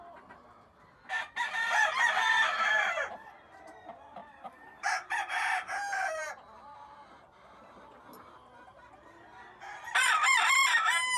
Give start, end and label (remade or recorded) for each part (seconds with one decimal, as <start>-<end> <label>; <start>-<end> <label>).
0.0-4.2 recorded; 4.2-6.2 remade; 6.2-11.2 recorded